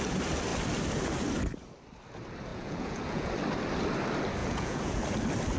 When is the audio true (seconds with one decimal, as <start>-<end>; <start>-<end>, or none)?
0.0-2.5; 3.3-4.4; 5.0-5.6